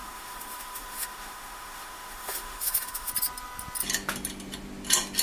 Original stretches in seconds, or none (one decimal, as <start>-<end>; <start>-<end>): 3.1-5.2